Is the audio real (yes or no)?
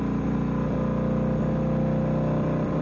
yes